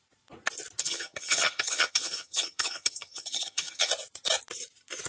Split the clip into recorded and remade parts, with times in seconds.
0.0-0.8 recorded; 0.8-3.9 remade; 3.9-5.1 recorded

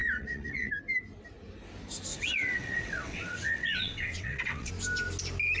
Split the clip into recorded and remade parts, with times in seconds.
0.0-0.7 remade; 0.7-2.1 recorded; 2.1-4.7 remade; 4.7-5.6 recorded

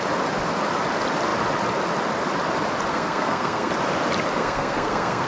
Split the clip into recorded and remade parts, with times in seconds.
0.0-2.9 recorded; 2.9-3.7 remade; 3.7-4.4 recorded; 4.4-5.3 remade

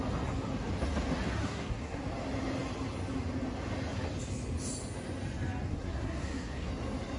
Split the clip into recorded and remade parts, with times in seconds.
0.0-1.4 recorded; 1.4-2.0 remade; 2.0-5.7 recorded; 5.7-6.7 remade; 6.7-7.2 recorded

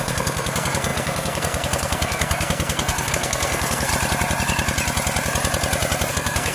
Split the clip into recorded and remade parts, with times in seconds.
0.0-3.9 remade; 3.9-6.1 recorded; 6.1-6.5 remade

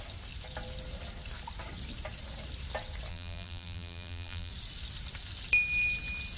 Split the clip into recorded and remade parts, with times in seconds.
0.0-3.1 recorded; 3.1-4.5 remade; 4.5-6.4 recorded

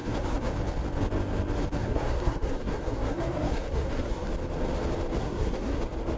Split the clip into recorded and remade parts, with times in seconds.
0.0-0.5 remade; 0.5-1.8 recorded; 1.8-4.3 remade; 4.3-5.2 recorded; 5.2-5.8 remade; 5.8-6.2 recorded